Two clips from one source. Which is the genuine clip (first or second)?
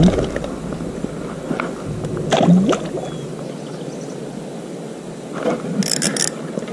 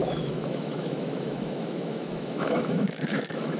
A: first